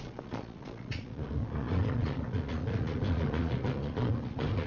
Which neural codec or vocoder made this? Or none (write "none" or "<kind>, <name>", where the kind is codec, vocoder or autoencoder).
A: vocoder, Vocos